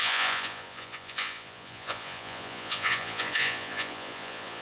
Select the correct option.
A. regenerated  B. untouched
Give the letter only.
A